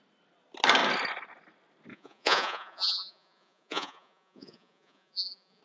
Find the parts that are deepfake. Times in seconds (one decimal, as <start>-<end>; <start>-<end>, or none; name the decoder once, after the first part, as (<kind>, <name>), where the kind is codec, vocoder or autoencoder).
1.9-5.6 (vocoder, Vocos)